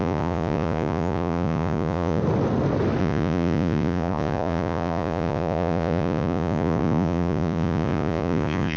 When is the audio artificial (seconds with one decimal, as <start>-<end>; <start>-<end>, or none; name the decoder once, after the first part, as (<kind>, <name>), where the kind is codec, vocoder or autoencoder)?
0.0-2.2 (vocoder, Vocos); 3.0-8.8